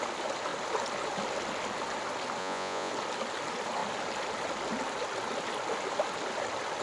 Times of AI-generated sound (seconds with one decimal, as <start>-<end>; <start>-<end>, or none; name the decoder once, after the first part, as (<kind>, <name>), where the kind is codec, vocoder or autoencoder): 2.4-2.9 (vocoder, Vocos)